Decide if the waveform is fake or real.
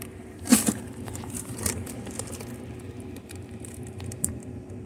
fake